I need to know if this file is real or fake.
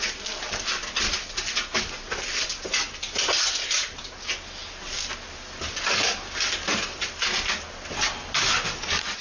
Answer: real